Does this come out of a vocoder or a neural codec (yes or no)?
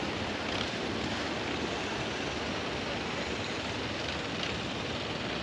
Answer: no